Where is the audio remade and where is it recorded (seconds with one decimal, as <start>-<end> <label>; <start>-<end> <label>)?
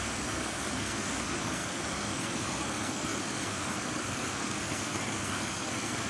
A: 0.0-6.1 remade